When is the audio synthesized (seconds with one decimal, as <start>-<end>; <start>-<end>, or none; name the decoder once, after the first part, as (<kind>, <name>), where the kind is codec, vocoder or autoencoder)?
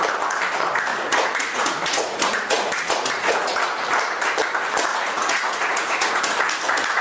0.9-3.6 (vocoder, Vocos); 4.9-6.2